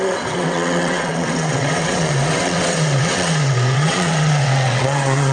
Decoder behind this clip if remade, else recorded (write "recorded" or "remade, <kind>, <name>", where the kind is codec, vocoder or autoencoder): remade, vocoder, WaveNeXt